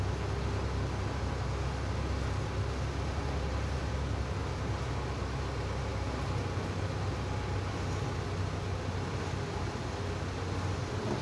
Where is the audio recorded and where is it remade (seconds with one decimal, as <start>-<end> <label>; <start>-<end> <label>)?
0.0-11.2 recorded